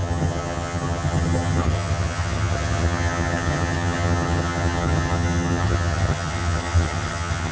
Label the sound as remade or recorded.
remade